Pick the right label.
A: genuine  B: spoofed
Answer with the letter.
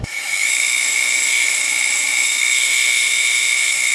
B